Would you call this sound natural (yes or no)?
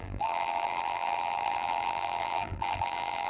no